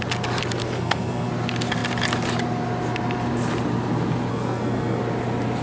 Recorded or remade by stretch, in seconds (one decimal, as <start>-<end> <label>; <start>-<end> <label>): 0.0-0.6 recorded; 0.6-1.3 remade; 1.3-4.3 recorded; 4.3-5.0 remade; 5.0-5.6 recorded